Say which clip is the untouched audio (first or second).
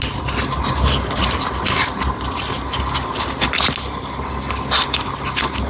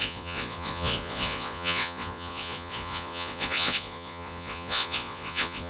first